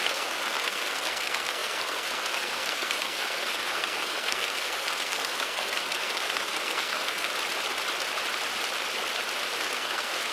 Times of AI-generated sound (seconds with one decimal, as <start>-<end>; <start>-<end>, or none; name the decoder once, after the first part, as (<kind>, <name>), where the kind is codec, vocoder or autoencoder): 0.0-7.3 (codec, SNAC); 9.6-10.3